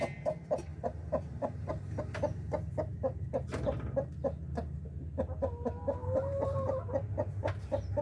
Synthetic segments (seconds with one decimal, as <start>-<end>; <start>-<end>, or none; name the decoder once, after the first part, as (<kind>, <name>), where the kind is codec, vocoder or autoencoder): 0.7-2.0 (vocoder, BigVGAN v2); 6.0-6.7